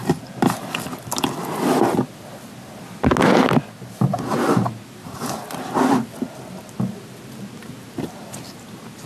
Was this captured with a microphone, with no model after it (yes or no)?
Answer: yes